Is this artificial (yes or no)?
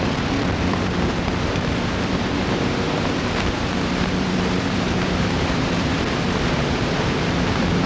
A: yes